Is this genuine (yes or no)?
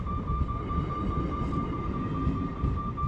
yes